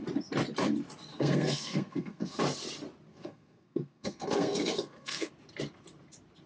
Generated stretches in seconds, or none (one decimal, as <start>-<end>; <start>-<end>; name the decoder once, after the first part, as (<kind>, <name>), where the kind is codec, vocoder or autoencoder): 1.1-2.4 (codec, SNAC); 3.1-5.3